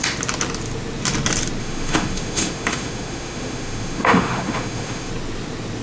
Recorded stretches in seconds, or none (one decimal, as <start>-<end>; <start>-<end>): 0.0-1.6; 5.1-5.8